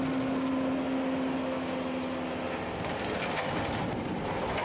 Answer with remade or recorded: recorded